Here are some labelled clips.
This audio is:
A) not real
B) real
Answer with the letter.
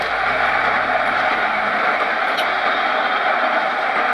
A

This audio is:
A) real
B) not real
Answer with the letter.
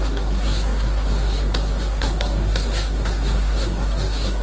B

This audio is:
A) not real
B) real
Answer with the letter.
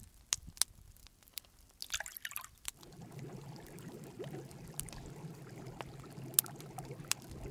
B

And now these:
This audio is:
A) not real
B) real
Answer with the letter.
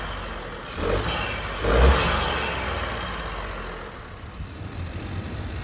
B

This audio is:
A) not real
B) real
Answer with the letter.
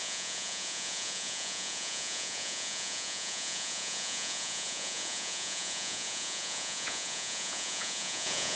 A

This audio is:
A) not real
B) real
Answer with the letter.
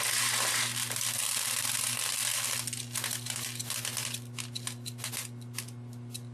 B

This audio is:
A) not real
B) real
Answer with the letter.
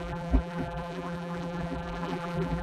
A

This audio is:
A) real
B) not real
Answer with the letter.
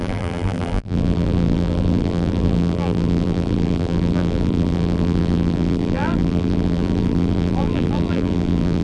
B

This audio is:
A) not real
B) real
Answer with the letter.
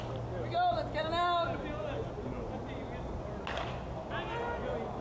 B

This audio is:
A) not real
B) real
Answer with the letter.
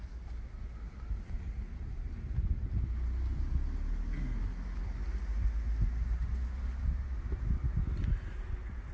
B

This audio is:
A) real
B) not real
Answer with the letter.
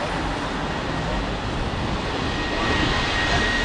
A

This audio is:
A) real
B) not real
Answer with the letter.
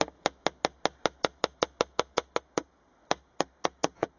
A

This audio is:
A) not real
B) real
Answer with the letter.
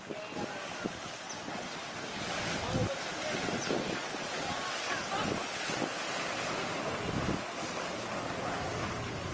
B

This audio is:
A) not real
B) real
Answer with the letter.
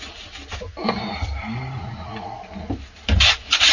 B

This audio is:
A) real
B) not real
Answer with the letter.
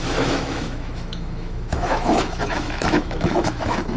B